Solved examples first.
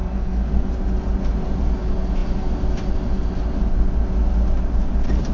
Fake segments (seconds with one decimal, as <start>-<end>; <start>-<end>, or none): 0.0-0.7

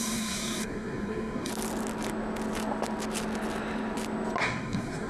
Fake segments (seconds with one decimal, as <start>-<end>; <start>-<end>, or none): 0.0-1.5; 4.4-5.1

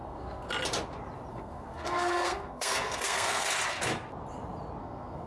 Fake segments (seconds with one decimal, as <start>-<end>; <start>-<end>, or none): 0.0-0.5; 1.3-3.5; 4.8-5.3